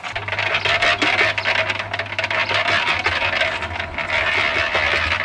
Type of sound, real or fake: real